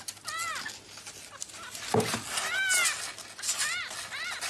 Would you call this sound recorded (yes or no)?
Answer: yes